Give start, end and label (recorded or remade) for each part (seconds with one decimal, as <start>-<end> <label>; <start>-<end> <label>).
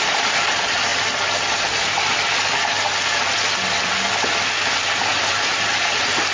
0.0-6.3 recorded